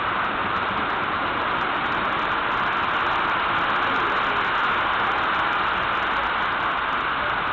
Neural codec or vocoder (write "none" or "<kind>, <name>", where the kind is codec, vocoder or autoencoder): none